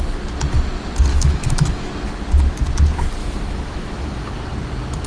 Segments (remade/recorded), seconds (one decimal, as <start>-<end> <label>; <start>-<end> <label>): 0.0-1.1 recorded; 1.1-1.9 remade; 1.9-3.2 recorded; 3.2-4.3 remade; 4.3-5.1 recorded